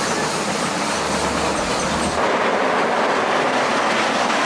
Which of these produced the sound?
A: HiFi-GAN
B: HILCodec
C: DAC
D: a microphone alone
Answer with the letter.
D